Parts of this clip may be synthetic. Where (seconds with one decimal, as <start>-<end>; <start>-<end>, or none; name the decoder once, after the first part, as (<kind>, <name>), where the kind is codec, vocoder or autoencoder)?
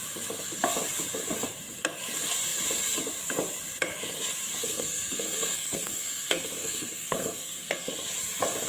4.6-7.9 (codec, SNAC)